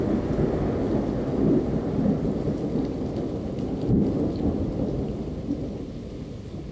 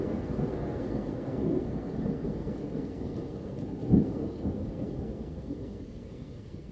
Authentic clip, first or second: first